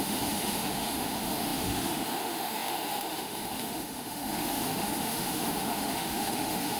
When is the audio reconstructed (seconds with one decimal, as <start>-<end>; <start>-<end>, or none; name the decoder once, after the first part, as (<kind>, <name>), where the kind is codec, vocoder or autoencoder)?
0.0-6.8 (autoencoder, DAC-VAE)